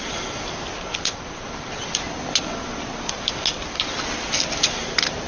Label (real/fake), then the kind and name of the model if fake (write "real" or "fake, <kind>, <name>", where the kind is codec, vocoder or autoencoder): real